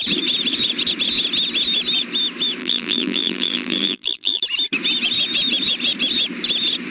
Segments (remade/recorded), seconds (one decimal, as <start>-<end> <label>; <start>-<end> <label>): 0.0-2.6 recorded; 2.6-4.4 remade; 4.4-6.9 recorded